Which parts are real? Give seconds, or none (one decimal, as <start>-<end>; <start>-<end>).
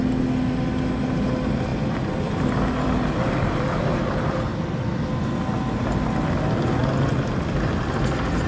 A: 0.0-1.7; 5.4-6.8; 7.5-8.5